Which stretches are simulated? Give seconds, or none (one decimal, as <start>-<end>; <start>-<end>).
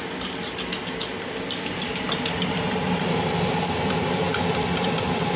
none